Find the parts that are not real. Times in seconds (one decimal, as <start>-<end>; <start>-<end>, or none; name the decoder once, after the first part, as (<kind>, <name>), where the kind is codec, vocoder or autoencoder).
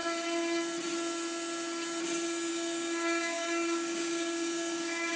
2.5-5.2 (codec, DAC)